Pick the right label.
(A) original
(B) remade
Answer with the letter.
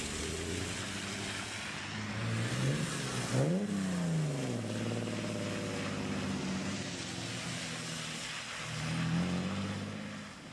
A